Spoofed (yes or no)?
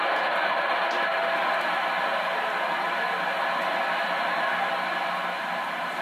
no